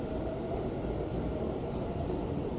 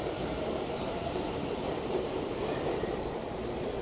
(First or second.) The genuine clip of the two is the first